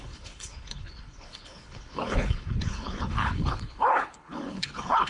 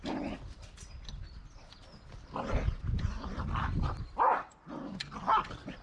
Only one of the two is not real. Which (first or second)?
first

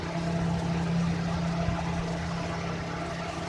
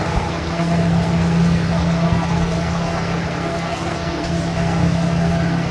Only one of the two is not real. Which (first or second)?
second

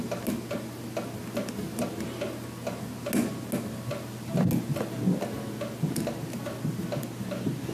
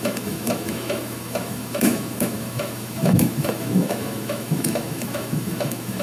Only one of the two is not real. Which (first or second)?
second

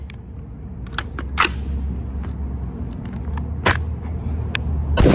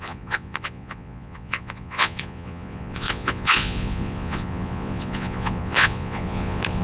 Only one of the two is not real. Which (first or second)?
second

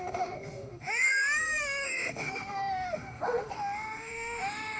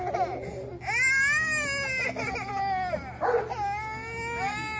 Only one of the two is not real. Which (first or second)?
first